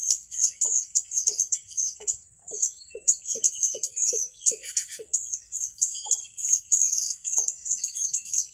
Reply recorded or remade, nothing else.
remade